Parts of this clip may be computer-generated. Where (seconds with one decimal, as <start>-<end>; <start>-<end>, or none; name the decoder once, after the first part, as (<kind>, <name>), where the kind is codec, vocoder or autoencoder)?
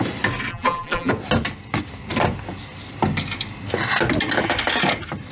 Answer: 0.5-1.1 (vocoder, BigVGAN v2)